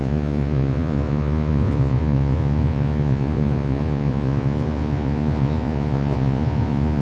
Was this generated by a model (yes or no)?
yes